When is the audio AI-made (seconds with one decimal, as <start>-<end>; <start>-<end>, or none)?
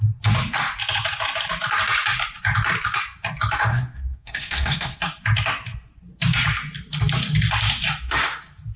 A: 3.7-5.0